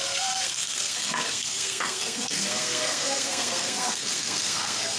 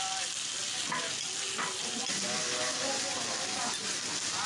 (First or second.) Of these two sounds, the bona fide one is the second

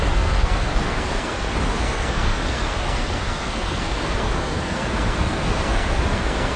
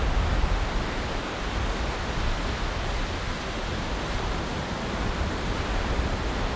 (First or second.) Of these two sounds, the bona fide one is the second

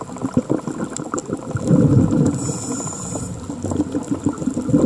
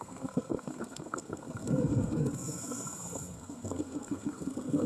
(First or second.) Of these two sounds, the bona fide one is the first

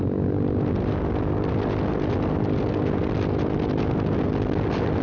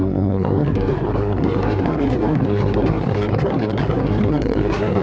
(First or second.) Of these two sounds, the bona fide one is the first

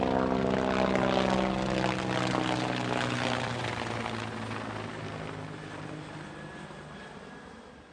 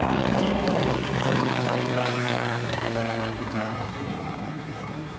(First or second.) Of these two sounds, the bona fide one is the first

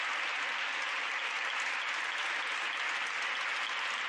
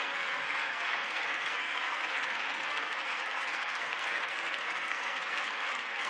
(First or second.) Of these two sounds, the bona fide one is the first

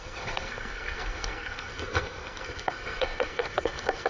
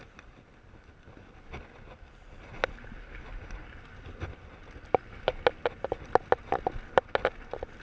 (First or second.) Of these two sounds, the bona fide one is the second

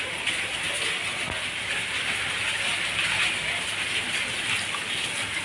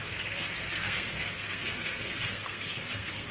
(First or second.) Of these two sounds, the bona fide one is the first